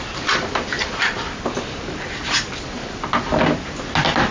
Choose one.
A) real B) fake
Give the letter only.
A